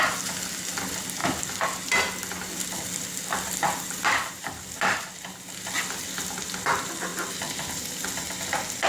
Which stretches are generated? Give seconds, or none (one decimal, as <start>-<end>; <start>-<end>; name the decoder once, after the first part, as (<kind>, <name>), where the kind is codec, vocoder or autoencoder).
1.2-5.5 (vocoder, BigVGAN v2); 7.1-7.7